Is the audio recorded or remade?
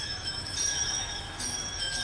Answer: remade